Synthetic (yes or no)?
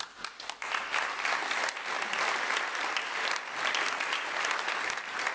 no